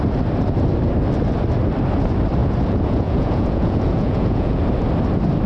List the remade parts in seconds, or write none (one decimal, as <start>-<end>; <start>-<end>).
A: 2.4-4.6